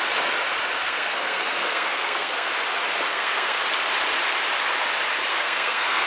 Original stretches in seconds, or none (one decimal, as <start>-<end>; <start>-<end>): 0.0-0.8; 2.5-3.1; 3.6-5.3